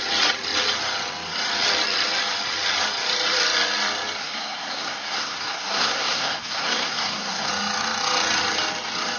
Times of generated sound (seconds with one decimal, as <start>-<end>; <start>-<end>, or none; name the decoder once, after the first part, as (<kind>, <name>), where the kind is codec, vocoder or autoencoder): 4.2-7.5 (codec, SNAC)